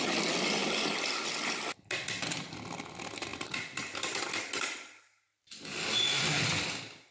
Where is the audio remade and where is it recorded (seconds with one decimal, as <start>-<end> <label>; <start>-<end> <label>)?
0.0-7.1 recorded